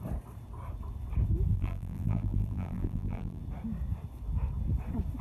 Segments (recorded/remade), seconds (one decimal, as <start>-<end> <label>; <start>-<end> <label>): 0.0-1.5 recorded; 1.5-3.4 remade; 3.4-5.2 recorded